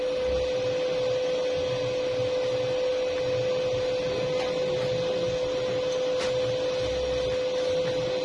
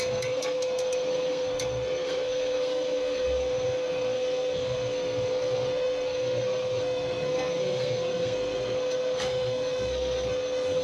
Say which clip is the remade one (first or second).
second